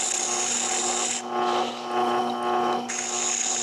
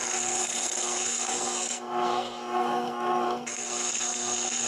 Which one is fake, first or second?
second